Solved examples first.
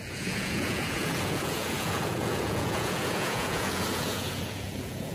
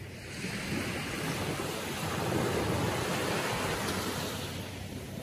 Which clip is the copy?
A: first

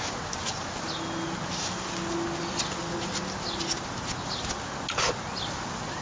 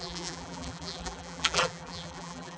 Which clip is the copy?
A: second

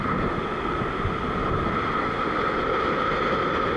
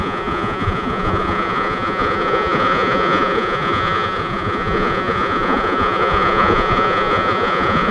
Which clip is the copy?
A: second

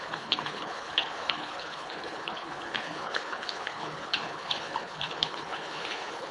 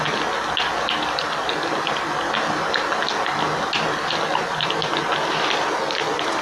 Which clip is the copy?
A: first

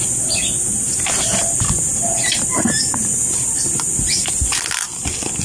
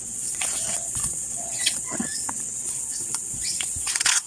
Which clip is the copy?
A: second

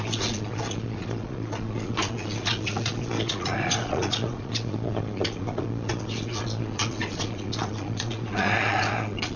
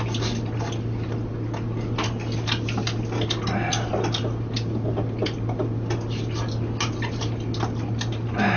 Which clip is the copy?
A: first